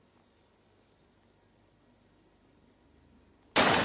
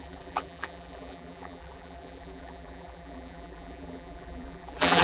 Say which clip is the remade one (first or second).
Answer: second